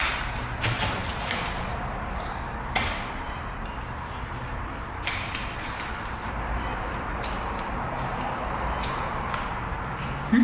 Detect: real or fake fake